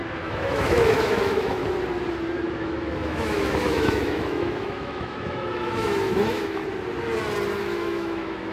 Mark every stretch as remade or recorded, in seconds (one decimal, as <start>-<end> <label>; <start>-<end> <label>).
0.0-1.6 remade; 1.6-2.5 recorded; 2.5-6.6 remade; 6.6-7.6 recorded; 7.6-8.5 remade